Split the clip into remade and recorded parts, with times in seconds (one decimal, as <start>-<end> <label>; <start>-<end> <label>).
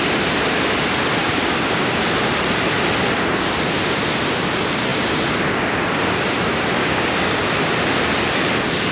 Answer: 0.0-1.2 recorded; 1.2-2.0 remade; 2.0-6.8 recorded; 6.8-7.5 remade; 7.5-8.9 recorded